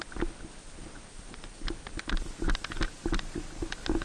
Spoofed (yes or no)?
no